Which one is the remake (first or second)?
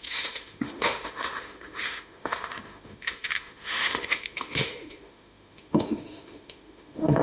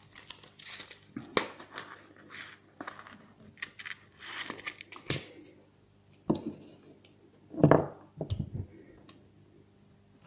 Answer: first